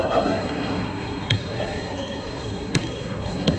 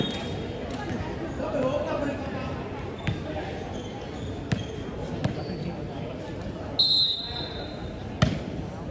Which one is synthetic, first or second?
first